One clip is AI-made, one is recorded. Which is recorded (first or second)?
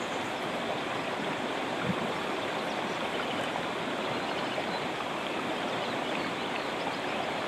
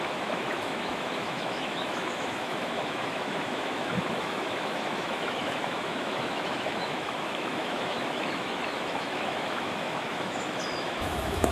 first